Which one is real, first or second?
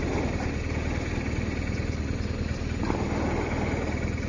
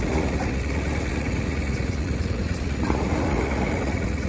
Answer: first